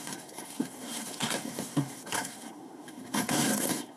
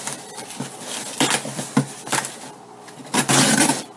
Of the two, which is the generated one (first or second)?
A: first